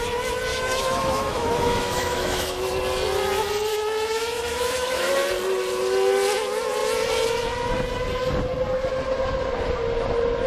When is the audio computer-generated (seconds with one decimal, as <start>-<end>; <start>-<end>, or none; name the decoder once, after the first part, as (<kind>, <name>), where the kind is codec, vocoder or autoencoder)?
0.5-2.6 (autoencoder, DAC-VAE); 3.7-5.1